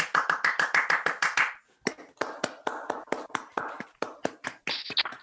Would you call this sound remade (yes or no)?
no